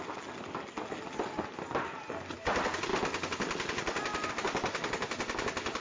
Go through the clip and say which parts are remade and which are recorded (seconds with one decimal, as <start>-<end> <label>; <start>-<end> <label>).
0.0-5.8 recorded